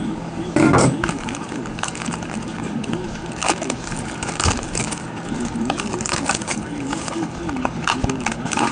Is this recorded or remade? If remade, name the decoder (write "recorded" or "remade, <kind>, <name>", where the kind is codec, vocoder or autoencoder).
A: remade, codec, DAC